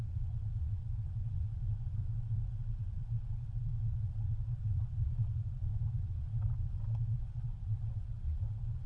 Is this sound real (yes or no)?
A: no